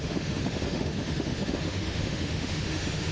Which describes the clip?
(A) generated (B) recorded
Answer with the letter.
A